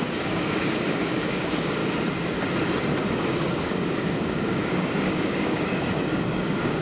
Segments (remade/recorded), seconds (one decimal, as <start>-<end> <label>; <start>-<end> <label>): 0.0-1.8 remade; 1.8-3.1 recorded; 3.1-6.8 remade